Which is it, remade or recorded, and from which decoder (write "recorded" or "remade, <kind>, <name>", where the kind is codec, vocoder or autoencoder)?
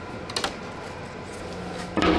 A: recorded